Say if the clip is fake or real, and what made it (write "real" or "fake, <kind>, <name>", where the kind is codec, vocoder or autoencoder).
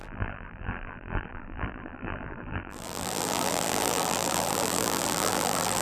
fake, vocoder, BigVGAN v2